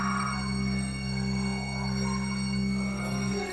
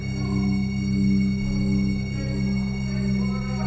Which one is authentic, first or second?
second